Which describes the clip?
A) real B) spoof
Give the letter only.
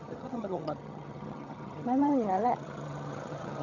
B